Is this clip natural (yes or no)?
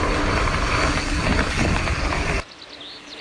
yes